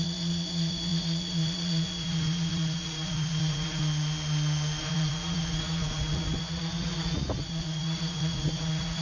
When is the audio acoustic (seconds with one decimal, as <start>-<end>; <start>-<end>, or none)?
3.8-4.8